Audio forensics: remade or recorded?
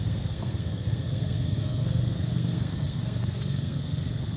remade